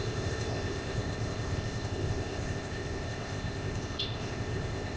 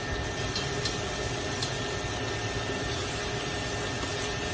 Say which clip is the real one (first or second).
second